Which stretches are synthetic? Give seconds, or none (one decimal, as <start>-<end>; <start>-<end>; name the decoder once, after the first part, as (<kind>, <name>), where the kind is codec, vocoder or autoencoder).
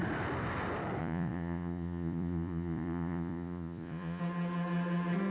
1.0-4.2 (vocoder, Vocos)